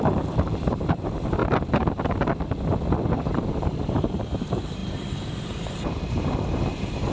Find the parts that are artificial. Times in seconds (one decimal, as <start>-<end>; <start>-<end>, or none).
0.0-1.4; 3.5-7.1